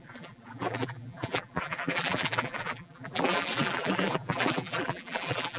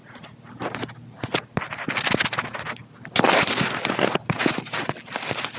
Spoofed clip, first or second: first